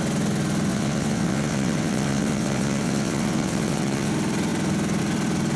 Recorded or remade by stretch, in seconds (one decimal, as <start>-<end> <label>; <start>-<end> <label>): 0.0-0.7 recorded; 0.7-4.1 remade; 4.1-5.6 recorded